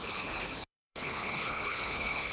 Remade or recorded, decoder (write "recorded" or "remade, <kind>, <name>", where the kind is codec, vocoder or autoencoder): remade, codec, HILCodec